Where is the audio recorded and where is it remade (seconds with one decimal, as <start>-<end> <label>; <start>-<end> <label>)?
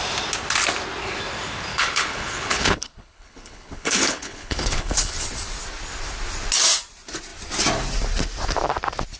0.0-1.7 recorded; 1.7-5.2 remade; 5.2-9.2 recorded